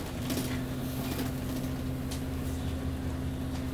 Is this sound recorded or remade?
recorded